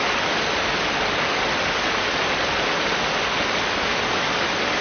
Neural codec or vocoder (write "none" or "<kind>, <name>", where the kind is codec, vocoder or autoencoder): none